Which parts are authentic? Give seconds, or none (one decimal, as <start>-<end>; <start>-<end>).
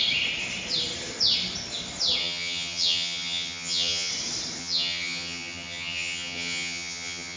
0.0-2.2; 4.1-4.6